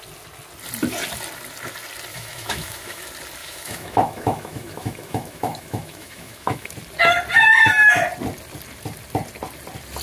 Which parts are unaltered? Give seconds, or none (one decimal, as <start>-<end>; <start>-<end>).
0.0-2.1; 3.0-3.4; 6.7-10.0